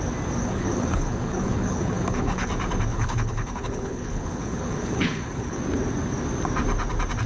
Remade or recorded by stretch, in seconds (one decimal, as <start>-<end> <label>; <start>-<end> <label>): 0.0-0.4 recorded; 0.4-2.5 remade; 2.5-2.9 recorded; 2.9-5.6 remade; 5.6-7.3 recorded